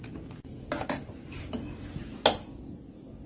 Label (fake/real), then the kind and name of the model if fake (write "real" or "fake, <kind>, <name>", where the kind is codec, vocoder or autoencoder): real